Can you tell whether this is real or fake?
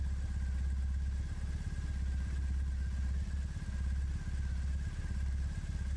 real